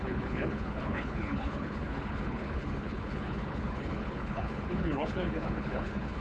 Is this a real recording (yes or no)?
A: no